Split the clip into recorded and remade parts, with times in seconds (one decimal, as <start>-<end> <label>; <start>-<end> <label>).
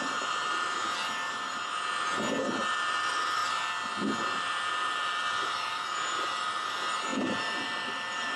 0.0-0.8 remade; 0.8-2.6 recorded; 2.6-3.4 remade; 3.4-4.2 recorded; 4.2-8.4 remade